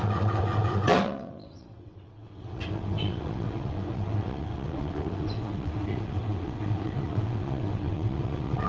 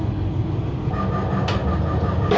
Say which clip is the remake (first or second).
first